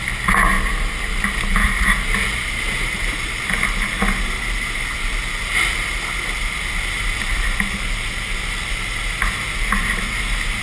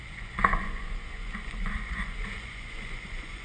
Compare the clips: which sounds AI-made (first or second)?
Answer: second